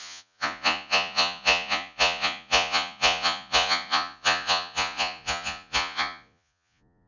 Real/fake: fake